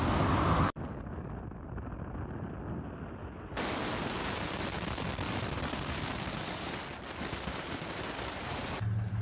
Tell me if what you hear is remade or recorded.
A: recorded